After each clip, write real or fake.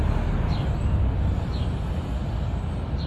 real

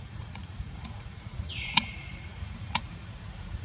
fake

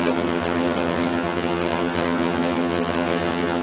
fake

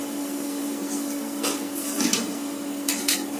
fake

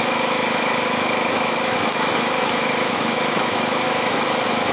fake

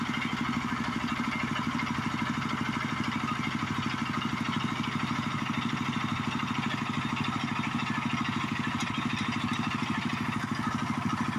real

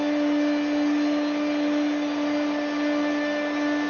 real